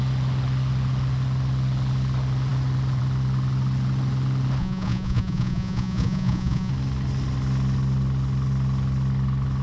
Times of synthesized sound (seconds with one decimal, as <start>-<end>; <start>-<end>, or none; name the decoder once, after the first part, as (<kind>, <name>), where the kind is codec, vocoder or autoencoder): 4.6-6.7 (vocoder, Vocos)